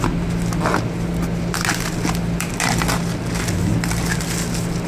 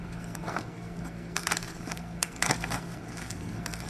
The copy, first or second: second